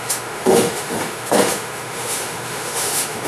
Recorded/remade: remade